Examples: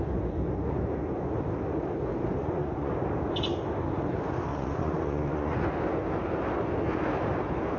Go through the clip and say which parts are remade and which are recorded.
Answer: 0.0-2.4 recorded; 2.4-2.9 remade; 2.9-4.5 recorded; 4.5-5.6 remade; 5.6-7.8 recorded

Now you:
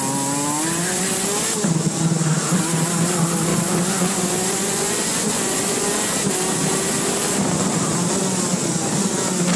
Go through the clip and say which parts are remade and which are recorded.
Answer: 0.0-3.5 recorded; 3.5-5.9 remade; 5.9-9.6 recorded

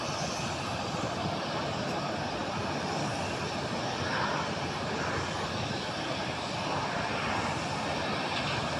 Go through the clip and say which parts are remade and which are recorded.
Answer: 0.0-8.8 recorded

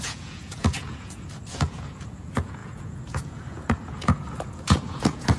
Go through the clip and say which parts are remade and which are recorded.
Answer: 0.0-5.4 remade

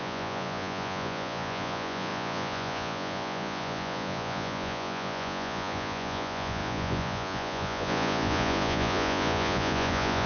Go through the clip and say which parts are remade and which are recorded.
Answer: 0.0-10.3 remade

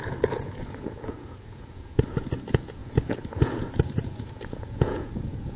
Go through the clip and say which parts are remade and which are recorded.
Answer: 0.0-5.6 remade

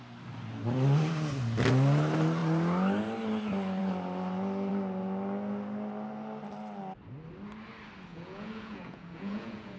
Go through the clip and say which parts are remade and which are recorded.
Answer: 0.0-8.1 recorded; 8.1-9.8 remade